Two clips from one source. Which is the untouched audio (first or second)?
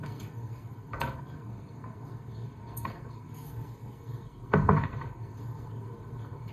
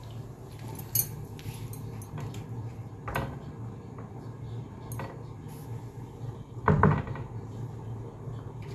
second